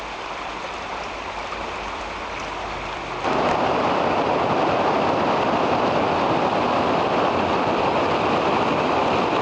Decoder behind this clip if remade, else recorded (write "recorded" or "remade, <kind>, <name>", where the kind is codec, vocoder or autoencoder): recorded